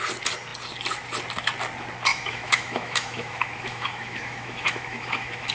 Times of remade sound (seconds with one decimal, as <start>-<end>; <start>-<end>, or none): 2.1-5.5